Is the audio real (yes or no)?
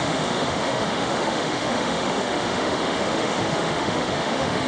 no